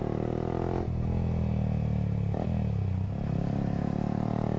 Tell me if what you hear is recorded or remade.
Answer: recorded